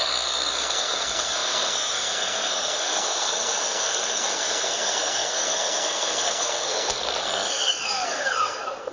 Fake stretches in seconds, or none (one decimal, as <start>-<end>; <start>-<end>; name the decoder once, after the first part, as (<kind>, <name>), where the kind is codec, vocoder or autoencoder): 0.0-8.9 (codec, SNAC)